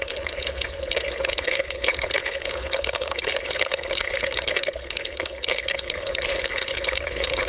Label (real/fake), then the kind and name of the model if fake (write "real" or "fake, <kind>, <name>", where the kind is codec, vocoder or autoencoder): fake, codec, HILCodec